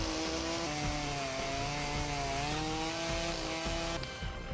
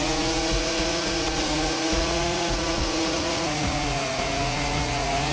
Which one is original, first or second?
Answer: first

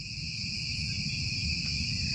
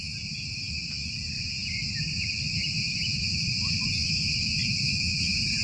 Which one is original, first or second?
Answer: second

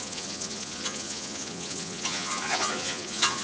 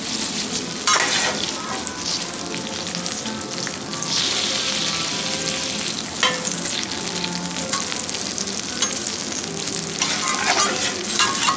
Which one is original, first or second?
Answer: second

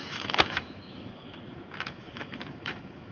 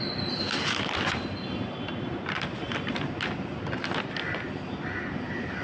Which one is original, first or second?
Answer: second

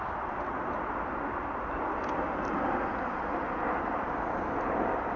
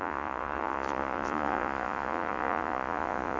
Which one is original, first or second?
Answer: first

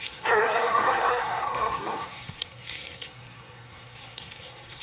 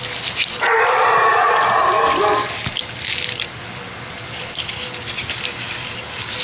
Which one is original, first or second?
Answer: second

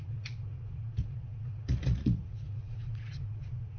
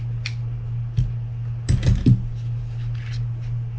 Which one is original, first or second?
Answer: second